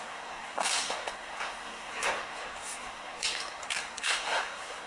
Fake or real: fake